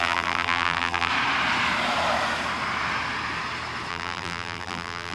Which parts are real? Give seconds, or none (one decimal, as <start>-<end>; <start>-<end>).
1.1-3.9